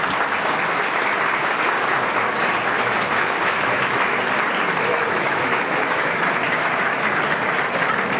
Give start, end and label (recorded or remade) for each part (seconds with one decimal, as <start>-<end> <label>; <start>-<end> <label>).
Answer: 0.0-2.4 recorded; 2.4-4.2 remade; 4.2-4.9 recorded; 4.9-6.3 remade; 6.3-8.2 recorded